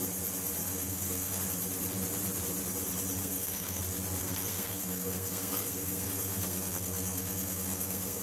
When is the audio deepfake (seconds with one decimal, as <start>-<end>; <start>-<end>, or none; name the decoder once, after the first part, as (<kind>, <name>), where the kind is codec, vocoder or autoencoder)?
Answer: 0.6-1.4 (codec, SNAC); 3.2-3.8; 4.2-8.2